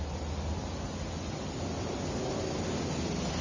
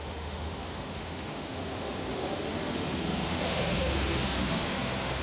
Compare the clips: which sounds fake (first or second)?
second